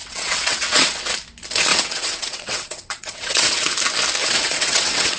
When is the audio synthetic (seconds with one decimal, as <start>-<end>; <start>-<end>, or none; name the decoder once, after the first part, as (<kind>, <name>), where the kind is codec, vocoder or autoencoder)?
0.0-1.1 (vocoder, WaveNeXt); 1.7-3.7; 4.2-5.2